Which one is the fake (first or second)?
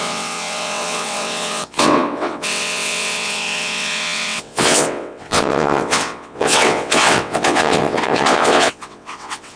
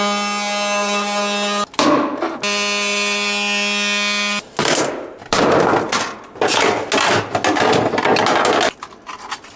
first